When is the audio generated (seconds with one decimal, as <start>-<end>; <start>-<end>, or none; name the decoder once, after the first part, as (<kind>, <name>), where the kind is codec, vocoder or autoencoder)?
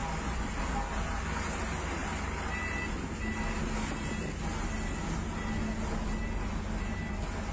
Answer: none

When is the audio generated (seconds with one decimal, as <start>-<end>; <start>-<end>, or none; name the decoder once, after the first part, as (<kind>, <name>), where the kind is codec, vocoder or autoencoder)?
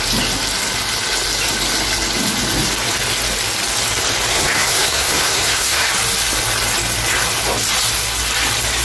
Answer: 4.3-5.9 (codec, SNAC)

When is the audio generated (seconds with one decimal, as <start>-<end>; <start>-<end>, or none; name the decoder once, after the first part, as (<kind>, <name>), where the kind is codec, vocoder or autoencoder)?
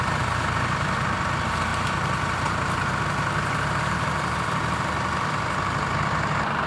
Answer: none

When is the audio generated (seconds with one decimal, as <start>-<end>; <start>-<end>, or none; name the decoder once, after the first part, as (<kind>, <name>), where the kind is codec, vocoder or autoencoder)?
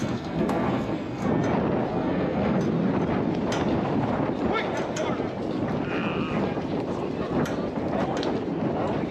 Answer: 0.0-1.3 (codec, SNAC); 1.9-2.6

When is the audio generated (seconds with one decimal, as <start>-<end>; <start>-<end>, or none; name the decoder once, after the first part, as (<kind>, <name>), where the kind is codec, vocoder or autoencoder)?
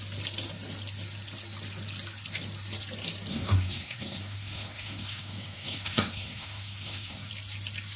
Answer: 3.3-7.3 (codec, SNAC)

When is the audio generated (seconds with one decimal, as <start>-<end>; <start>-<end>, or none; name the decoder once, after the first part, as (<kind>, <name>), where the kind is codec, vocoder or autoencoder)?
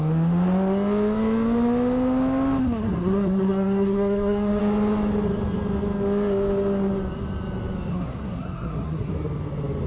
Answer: 2.6-4.6 (codec, SNAC); 7.9-9.1